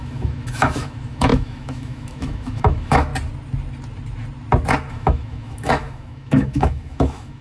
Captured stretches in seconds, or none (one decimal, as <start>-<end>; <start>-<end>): 3.1-4.9